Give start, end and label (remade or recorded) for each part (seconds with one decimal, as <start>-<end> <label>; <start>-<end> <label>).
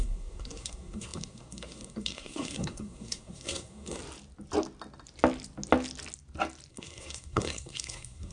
0.0-4.0 remade; 4.0-6.7 recorded; 6.7-8.3 remade